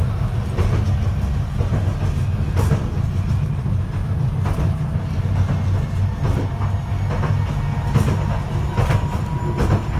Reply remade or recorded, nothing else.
recorded